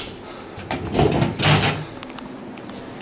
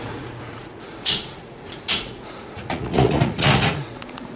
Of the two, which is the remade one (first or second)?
second